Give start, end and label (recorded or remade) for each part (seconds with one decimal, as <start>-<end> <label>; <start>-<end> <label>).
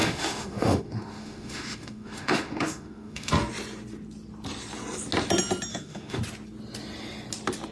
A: 0.0-3.3 remade; 3.3-5.7 recorded; 5.7-6.2 remade; 6.2-7.7 recorded